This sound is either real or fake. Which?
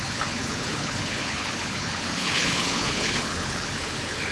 fake